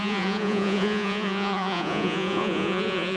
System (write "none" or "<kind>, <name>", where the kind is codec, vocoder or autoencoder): vocoder, Vocos